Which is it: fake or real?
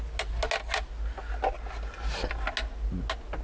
real